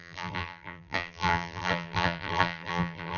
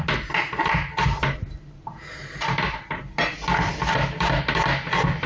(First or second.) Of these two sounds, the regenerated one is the first